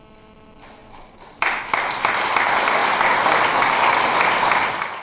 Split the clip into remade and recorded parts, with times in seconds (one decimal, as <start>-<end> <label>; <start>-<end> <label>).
0.0-5.0 recorded